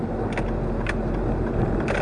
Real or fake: real